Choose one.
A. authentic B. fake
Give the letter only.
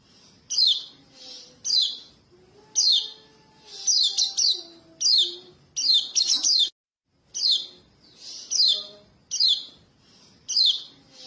A